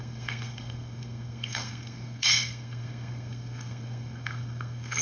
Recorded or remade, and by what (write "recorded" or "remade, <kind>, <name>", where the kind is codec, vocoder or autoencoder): remade, codec, SNAC